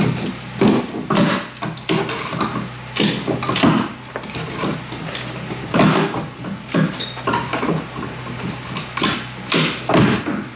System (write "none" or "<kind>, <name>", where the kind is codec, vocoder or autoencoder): none